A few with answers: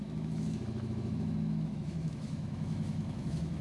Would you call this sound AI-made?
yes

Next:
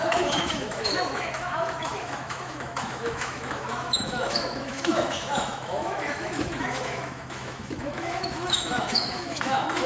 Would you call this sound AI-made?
yes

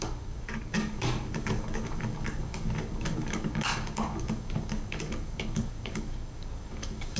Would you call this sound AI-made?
yes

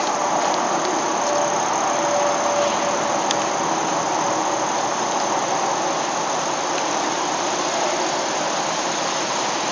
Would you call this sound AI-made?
no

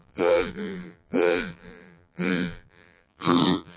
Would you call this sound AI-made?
yes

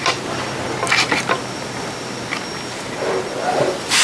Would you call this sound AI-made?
no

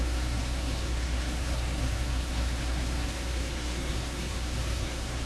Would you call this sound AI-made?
yes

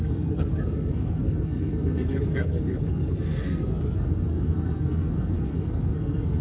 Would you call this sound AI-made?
yes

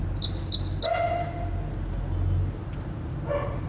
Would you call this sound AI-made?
no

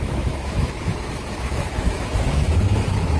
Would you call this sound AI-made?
yes